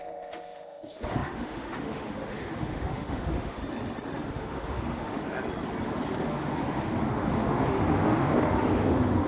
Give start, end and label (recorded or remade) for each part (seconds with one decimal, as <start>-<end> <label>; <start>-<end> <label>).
0.0-3.6 remade; 3.6-4.3 recorded; 4.3-5.2 remade; 5.2-6.2 recorded; 6.2-9.3 remade

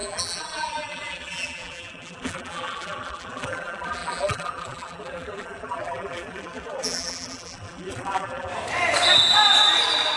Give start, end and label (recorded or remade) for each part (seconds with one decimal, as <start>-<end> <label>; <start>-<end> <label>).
0.0-8.5 remade; 8.5-10.2 recorded

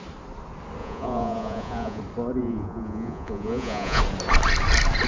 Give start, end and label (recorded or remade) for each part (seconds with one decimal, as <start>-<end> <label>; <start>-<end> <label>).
0.0-0.8 recorded; 0.8-2.0 remade; 2.0-2.4 recorded; 2.4-4.0 remade; 4.0-5.1 recorded